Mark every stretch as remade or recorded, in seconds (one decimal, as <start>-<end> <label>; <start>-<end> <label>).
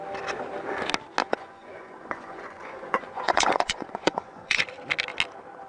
0.0-1.2 recorded; 1.2-4.6 remade; 4.6-5.7 recorded